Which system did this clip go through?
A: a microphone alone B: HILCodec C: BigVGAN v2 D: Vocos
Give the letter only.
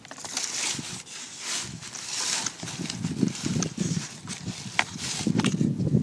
A